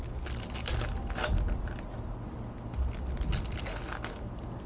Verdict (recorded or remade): recorded